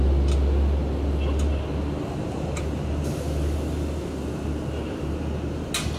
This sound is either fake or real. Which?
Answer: real